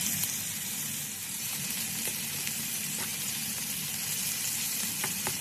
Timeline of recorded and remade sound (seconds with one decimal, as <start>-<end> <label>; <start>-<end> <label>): 0.0-1.2 recorded; 1.2-1.7 remade; 1.7-3.1 recorded; 3.1-4.2 remade; 4.2-5.4 recorded